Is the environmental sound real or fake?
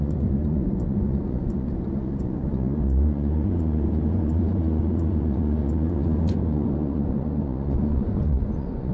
fake